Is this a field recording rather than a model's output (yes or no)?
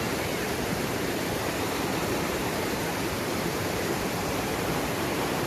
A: no